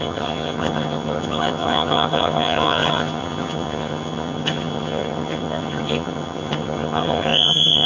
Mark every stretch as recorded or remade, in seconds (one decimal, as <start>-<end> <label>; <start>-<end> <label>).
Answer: 0.0-7.9 remade